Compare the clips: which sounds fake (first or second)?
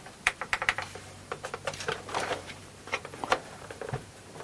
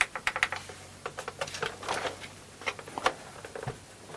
first